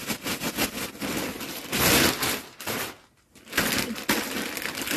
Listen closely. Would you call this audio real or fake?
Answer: real